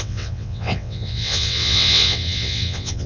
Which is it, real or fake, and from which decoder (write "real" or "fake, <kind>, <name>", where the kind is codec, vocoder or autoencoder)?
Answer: fake, vocoder, WaveNeXt